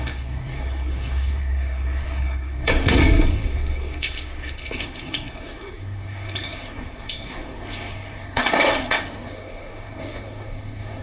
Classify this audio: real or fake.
fake